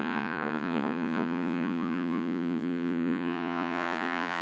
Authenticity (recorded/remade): remade